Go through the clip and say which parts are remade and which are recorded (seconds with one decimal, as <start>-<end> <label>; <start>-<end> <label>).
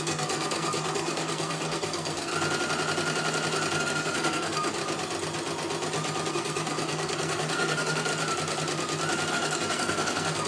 0.0-2.3 remade; 2.3-3.8 recorded; 3.8-4.8 remade; 4.8-6.3 recorded; 6.3-8.1 remade; 8.1-9.3 recorded; 9.3-10.5 remade